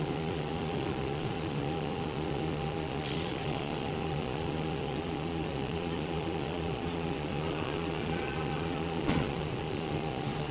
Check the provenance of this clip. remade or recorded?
remade